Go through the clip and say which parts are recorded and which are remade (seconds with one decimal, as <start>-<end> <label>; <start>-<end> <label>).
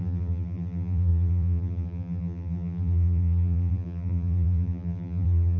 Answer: 0.0-5.6 remade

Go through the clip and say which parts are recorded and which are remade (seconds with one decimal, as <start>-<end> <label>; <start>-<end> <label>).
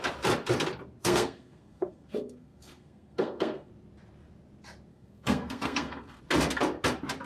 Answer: 0.0-1.0 recorded; 1.0-3.7 remade; 3.7-4.9 recorded; 4.9-6.2 remade; 6.2-7.2 recorded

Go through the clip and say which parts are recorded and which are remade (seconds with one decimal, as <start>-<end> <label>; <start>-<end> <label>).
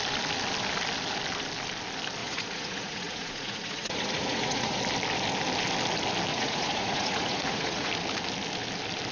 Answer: 0.0-2.2 recorded; 2.2-4.8 remade; 4.8-6.3 recorded; 6.3-7.9 remade; 7.9-9.1 recorded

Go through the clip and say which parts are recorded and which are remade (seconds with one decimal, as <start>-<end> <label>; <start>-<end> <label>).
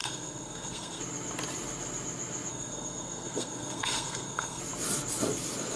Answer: 0.0-1.0 remade; 1.0-2.5 recorded; 2.5-4.6 remade; 4.6-5.8 recorded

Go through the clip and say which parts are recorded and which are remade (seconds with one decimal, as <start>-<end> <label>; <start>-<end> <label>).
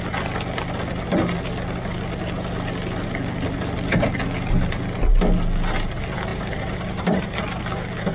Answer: 0.0-6.3 recorded; 6.3-7.2 remade; 7.2-8.1 recorded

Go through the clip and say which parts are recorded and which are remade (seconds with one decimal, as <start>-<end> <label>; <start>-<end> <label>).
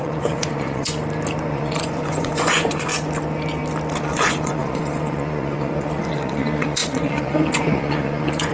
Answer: 0.0-1.0 remade; 1.0-1.5 recorded; 1.5-2.9 remade; 2.9-4.0 recorded; 4.0-8.5 remade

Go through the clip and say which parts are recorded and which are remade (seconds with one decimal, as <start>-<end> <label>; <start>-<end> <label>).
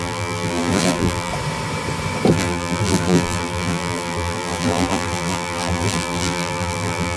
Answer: 0.0-1.3 remade; 1.3-2.3 recorded; 2.3-7.2 remade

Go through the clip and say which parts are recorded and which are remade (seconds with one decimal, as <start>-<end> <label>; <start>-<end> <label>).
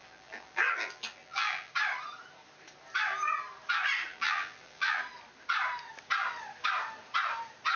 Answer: 0.0-1.7 remade; 1.7-4.1 recorded; 4.1-5.0 remade; 5.0-7.8 recorded